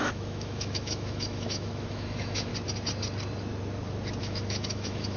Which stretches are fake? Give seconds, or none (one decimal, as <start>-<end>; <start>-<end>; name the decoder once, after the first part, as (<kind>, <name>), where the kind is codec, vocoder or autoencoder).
0.0-2.5 (autoencoder, DAC-VAE); 4.2-5.2